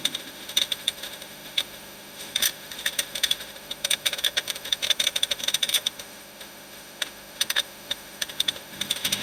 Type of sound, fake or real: fake